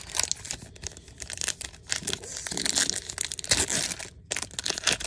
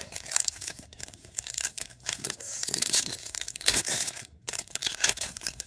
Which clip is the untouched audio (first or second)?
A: first